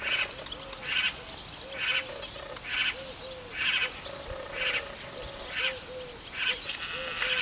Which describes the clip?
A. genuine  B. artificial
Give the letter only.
A